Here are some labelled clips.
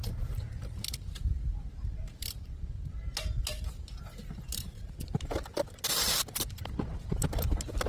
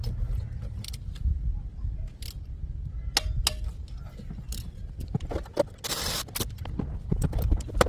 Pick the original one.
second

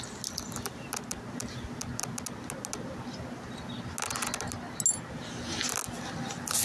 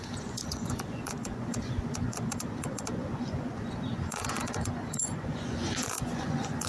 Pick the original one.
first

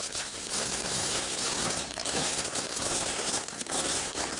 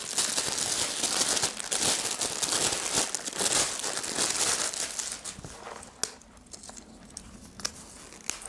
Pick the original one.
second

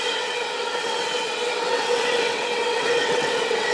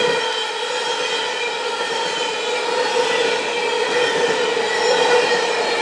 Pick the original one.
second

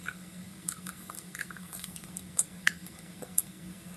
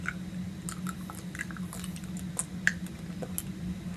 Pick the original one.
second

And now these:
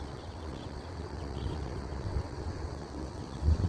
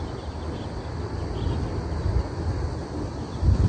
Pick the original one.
second